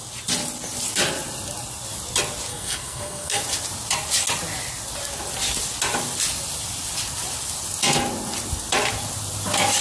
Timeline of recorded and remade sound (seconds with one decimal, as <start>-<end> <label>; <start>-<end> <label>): 0.0-2.5 recorded; 2.5-3.4 remade; 3.4-9.8 recorded